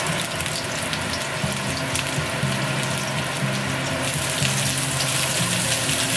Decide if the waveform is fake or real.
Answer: real